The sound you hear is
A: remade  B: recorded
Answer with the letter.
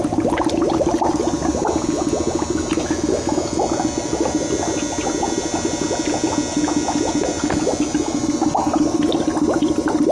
B